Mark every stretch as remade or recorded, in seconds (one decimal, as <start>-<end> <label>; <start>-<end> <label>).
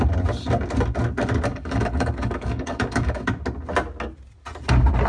0.0-1.5 recorded; 1.5-3.3 remade; 3.3-5.1 recorded